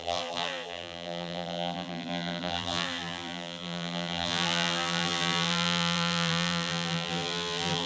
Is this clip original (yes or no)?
no